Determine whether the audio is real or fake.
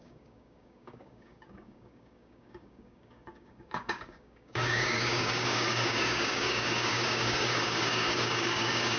fake